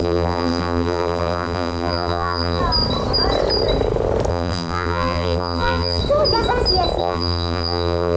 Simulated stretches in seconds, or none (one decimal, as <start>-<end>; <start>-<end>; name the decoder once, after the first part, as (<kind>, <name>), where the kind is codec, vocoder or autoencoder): 0.0-2.6 (vocoder, BigVGAN v2); 4.3-6.0; 7.0-8.2